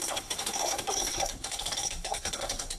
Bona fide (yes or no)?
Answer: no